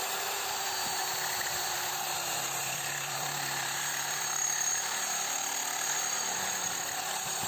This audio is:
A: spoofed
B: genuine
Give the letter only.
A